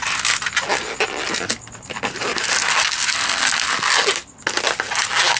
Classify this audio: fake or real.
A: real